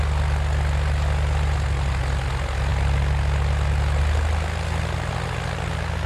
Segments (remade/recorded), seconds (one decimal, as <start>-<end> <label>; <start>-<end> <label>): 0.0-6.1 recorded